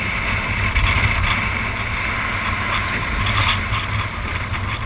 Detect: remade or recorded recorded